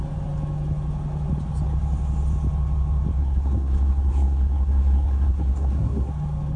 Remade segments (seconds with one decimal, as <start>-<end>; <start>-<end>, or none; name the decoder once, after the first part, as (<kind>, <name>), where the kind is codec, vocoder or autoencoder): 3.2-6.1 (codec, SNAC)